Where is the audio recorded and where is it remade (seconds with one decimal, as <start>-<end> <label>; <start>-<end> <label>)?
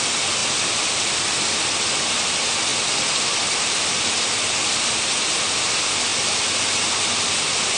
0.0-7.8 recorded